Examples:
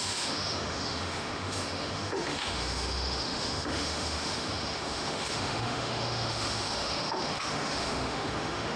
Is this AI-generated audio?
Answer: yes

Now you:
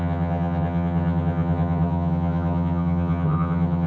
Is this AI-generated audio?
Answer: yes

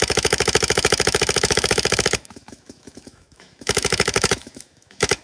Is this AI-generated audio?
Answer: yes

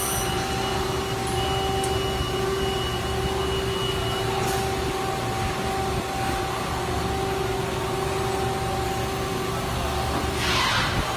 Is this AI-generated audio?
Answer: no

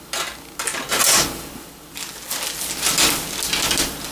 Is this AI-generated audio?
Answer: no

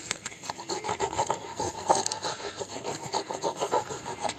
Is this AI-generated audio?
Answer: yes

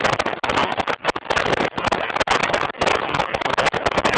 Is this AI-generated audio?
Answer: no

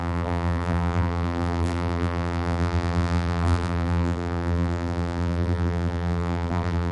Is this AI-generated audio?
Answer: yes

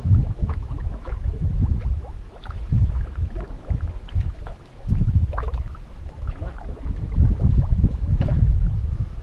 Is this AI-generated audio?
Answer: yes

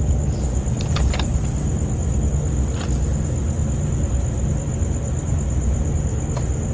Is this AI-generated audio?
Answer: no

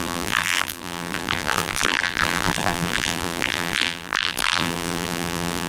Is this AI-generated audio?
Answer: yes